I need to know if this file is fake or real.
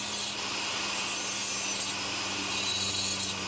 real